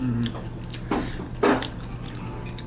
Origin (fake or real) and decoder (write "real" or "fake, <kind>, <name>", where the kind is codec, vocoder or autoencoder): real